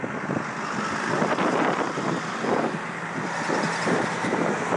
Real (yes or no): yes